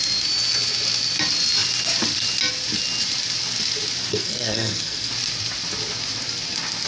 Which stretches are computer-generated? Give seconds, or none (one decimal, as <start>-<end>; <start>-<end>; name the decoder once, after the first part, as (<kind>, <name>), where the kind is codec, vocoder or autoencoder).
4.0-5.1 (codec, SNAC)